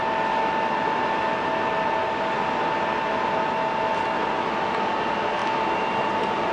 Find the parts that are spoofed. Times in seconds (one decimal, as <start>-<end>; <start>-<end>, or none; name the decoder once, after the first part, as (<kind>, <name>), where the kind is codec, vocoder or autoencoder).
5.4-6.0 (vocoder, BigVGAN v2)